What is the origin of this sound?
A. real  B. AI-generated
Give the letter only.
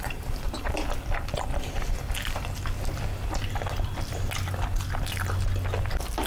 A